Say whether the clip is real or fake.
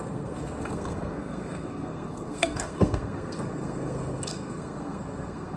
fake